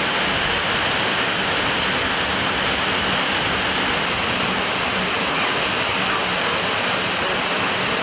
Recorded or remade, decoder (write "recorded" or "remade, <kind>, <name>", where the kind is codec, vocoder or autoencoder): recorded